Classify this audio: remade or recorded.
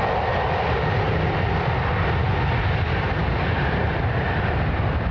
recorded